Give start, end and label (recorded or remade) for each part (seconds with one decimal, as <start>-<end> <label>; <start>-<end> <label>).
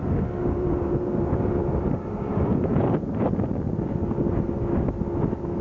0.0-0.4 recorded; 0.4-3.2 remade; 3.2-5.6 recorded